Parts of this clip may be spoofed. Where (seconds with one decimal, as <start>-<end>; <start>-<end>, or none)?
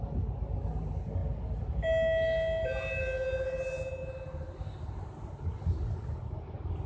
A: none